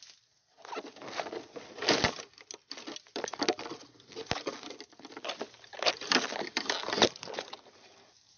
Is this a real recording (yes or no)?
yes